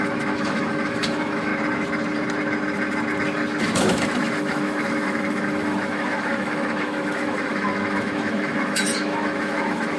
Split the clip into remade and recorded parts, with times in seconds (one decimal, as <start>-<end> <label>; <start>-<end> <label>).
0.0-1.5 remade; 1.5-3.6 recorded; 3.6-10.0 remade